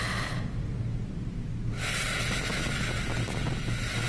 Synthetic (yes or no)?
no